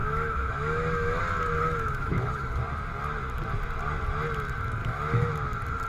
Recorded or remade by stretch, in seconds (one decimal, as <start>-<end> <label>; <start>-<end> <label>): 0.0-1.2 remade; 1.2-1.6 recorded; 1.6-2.6 remade; 2.6-4.8 recorded; 4.8-5.3 remade; 5.3-5.9 recorded